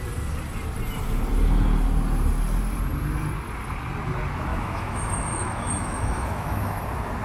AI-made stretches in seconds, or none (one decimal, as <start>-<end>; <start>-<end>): 4.5-6.8